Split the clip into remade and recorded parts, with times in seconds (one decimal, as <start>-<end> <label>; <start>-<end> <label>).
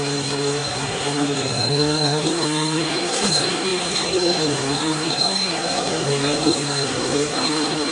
0.0-7.9 remade